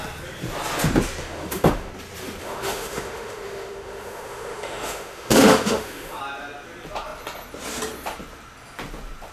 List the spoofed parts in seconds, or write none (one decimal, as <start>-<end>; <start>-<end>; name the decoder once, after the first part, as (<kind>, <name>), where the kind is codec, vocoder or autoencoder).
1.2-1.9 (autoencoder, DAC-VAE); 2.4-6.2